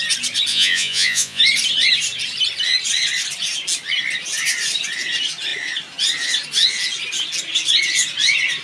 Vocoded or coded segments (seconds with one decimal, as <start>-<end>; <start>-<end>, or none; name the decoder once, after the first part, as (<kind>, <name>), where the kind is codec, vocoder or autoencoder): 0.5-1.4 (vocoder, Vocos)